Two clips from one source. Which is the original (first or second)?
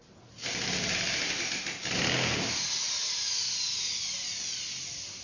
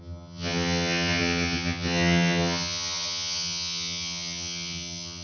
first